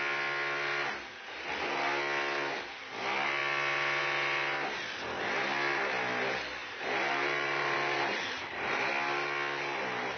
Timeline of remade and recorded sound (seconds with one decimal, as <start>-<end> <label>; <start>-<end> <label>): 0.0-6.6 recorded; 6.6-8.9 remade; 8.9-10.2 recorded